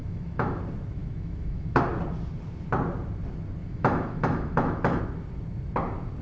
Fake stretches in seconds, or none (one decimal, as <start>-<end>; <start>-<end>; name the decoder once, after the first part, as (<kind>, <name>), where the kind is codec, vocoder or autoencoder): 0.0-0.6 (autoencoder, DAC-VAE); 1.0-1.8; 3.6-5.0